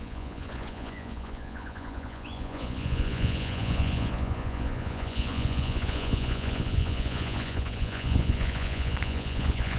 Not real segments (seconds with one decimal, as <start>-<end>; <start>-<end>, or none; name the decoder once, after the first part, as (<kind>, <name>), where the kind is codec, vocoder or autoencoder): 0.0-9.8 (vocoder, Vocos)